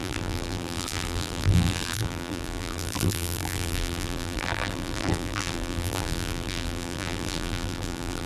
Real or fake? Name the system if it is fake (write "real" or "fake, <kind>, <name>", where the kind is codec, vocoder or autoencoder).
fake, vocoder, BigVGAN v2